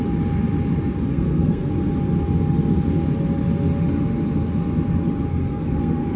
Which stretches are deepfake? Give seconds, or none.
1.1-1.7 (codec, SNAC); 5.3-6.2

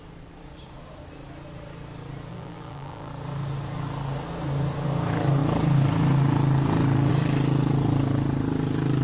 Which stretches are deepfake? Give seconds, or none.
2.3-3.1 (vocoder, BigVGAN v2)

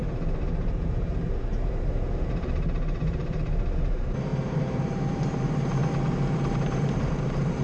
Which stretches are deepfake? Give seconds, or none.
0.0-5.8 (vocoder, BigVGAN v2); 6.5-7.6

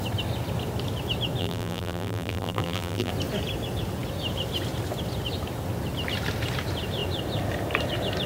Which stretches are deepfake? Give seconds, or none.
1.4-3.1 (vocoder, BigVGAN v2)

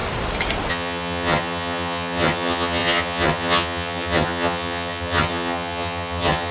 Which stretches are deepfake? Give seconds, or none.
0.7-6.5 (vocoder, HiFi-GAN)

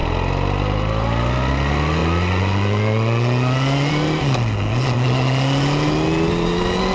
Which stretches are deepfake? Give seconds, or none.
none

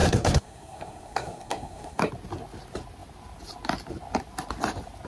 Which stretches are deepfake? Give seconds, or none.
0.0-2.1 (codec, SNAC)

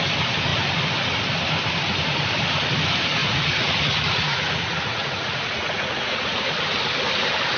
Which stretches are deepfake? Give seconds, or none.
3.2-6.4 (vocoder, Vocos)